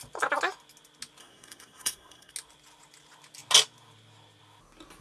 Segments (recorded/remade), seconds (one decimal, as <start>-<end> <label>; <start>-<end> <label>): 0.0-1.2 recorded; 1.2-2.3 remade; 2.3-5.0 recorded